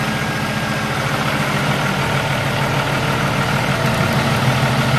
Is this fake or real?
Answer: real